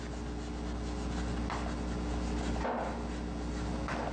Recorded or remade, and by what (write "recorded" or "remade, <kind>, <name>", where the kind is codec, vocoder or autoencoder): recorded